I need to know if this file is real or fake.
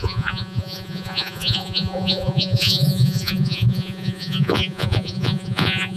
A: fake